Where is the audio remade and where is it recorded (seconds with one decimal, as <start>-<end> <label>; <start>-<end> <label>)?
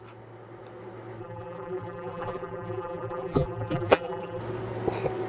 0.0-1.2 recorded; 1.2-4.4 remade; 4.4-5.3 recorded